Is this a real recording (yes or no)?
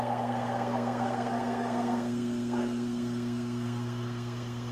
no